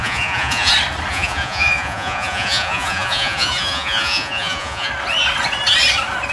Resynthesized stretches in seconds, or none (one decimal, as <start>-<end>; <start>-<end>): 0.0-0.7; 1.1-4.9